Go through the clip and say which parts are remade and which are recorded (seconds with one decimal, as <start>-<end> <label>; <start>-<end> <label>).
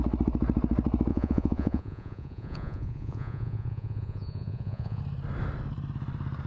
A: 0.0-1.1 recorded; 1.1-5.0 remade; 5.0-6.5 recorded